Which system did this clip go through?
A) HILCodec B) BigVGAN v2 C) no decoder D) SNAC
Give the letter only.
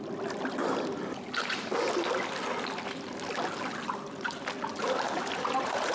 C